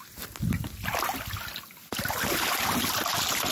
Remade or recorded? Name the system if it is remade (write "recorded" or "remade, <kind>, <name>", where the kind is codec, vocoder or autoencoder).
recorded